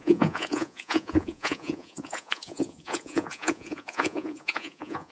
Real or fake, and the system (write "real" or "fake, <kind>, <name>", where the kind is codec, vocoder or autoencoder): fake, vocoder, Vocos